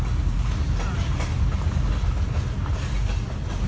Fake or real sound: real